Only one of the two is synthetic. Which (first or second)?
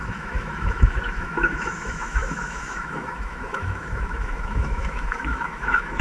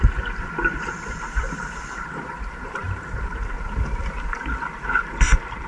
first